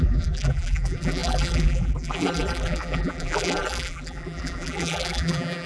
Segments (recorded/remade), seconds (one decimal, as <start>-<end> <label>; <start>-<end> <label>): 0.0-5.7 remade